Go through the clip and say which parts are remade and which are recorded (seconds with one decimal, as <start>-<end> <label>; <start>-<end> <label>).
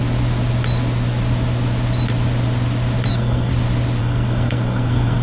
0.0-3.1 recorded; 3.1-3.5 remade; 3.5-4.0 recorded; 4.0-5.2 remade